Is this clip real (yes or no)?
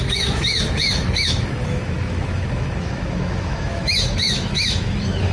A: no